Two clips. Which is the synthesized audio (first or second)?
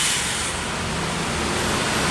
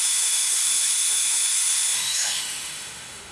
second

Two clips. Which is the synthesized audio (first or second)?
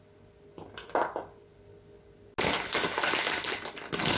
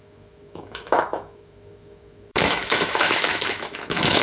second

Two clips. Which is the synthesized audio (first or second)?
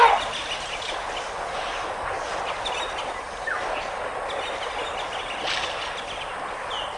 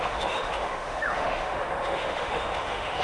second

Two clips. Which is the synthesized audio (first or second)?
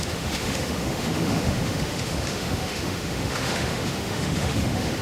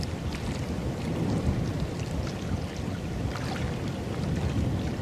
first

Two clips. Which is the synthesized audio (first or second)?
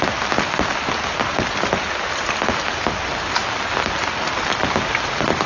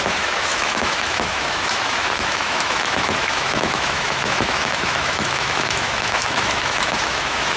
second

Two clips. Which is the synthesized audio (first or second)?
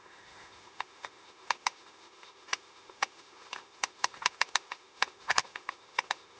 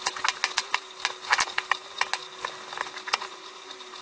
first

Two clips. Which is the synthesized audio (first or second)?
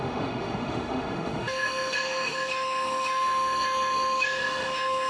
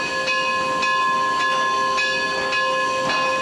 first